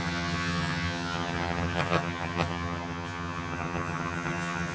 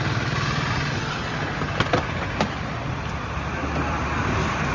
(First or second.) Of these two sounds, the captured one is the second